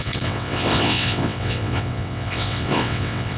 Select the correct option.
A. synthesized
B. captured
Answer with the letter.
A